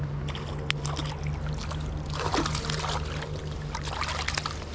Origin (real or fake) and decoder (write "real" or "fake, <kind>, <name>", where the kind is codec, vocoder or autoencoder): real